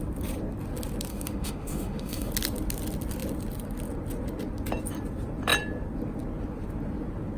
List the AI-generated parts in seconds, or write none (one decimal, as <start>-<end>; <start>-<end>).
1.1-2.3

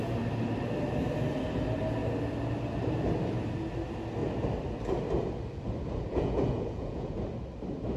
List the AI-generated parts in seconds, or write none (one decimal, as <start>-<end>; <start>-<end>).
6.1-7.2

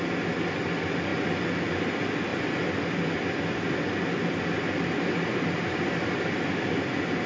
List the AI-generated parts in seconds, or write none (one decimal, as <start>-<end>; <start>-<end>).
2.3-3.0

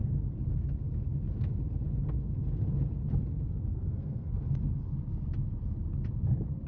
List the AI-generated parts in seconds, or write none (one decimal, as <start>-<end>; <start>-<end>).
3.7-4.3